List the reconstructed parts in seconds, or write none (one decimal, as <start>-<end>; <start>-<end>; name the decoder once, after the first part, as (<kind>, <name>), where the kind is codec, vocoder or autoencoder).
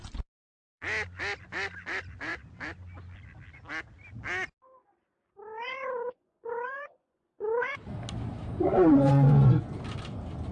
5.5-7.8 (vocoder, Vocos); 8.5-9.7